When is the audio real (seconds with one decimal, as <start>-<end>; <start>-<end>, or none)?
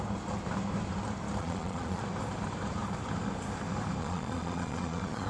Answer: 0.0-1.4; 2.0-4.0